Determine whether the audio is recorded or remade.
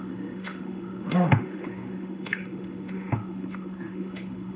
remade